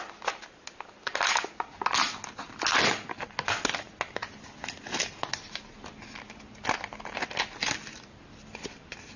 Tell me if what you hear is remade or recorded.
recorded